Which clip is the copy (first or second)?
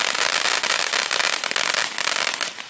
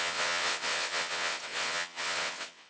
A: second